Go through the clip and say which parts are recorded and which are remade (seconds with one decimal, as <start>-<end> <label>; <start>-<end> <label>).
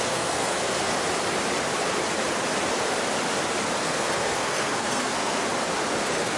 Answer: 0.0-0.9 remade; 0.9-3.8 recorded; 3.8-5.4 remade; 5.4-6.0 recorded; 6.0-6.4 remade